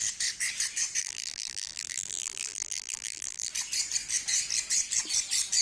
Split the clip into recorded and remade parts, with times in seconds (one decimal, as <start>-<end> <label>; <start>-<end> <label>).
0.0-1.0 recorded; 1.0-3.5 remade; 3.5-5.6 recorded